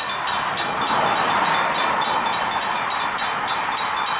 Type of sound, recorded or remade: remade